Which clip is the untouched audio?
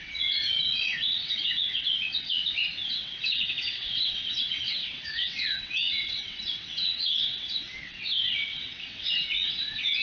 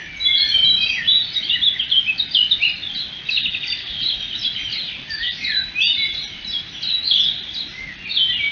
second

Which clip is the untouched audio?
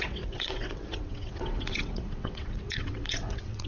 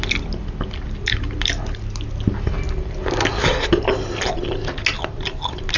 second